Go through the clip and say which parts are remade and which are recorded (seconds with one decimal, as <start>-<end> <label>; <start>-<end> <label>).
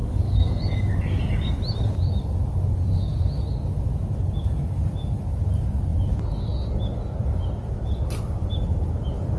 0.0-1.5 remade; 1.5-9.4 recorded